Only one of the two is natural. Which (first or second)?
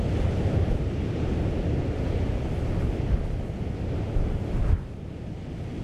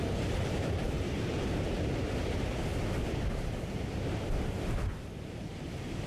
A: first